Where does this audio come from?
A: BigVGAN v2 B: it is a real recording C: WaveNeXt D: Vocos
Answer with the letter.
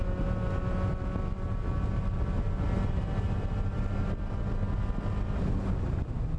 B